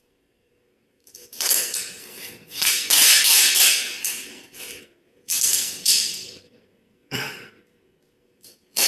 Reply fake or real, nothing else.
fake